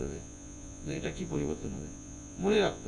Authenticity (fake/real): fake